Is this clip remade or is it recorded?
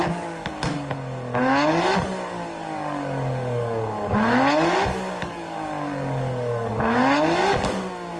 remade